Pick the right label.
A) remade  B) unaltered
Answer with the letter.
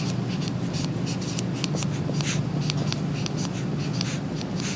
B